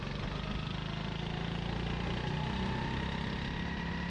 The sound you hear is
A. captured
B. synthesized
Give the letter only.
A